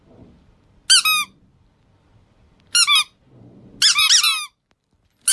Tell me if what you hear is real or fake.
real